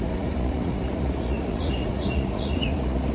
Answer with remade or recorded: remade